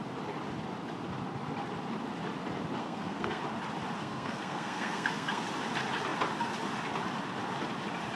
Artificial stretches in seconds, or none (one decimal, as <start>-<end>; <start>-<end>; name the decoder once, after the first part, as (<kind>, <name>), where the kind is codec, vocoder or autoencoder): 2.8-3.4 (codec, SNAC); 4.0-5.4